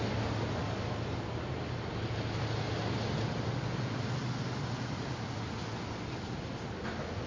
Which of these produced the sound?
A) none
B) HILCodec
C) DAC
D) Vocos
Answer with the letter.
A